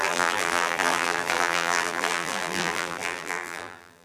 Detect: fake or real fake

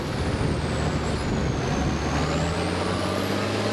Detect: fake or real real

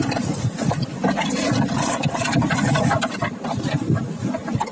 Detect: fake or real fake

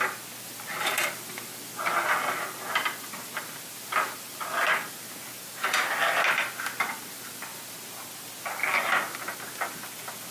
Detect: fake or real real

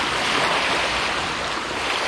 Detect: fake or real real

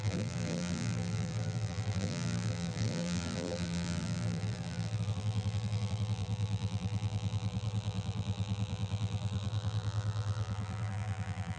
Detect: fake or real fake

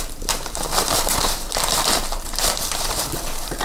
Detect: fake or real fake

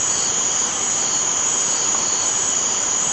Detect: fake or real fake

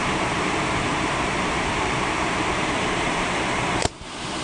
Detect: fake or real fake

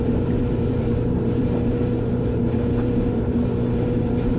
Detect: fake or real fake